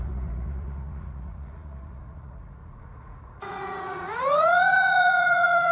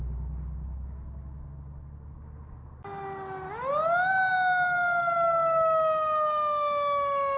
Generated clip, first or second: first